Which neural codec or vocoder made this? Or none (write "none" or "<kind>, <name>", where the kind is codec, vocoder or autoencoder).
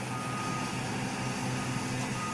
none